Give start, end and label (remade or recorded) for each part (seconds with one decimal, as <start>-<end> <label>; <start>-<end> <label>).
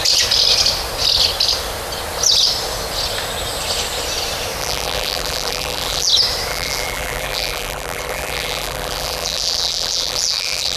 0.0-4.6 recorded; 4.6-6.1 remade; 6.1-6.5 recorded; 6.5-10.8 remade